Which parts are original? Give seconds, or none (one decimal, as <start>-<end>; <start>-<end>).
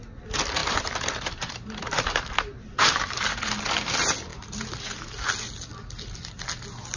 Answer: 0.0-0.6; 3.4-4.3; 5.1-7.0